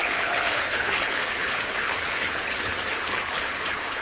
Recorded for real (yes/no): no